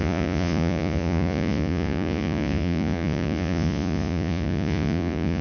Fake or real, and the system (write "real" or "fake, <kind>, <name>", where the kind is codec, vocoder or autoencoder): fake, vocoder, Vocos